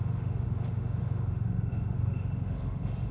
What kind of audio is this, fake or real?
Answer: fake